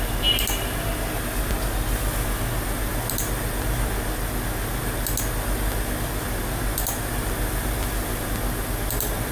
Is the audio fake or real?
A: real